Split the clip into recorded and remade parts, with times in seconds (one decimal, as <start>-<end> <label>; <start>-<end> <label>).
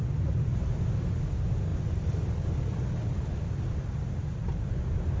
0.0-5.2 recorded